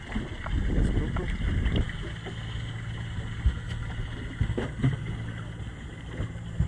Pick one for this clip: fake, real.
real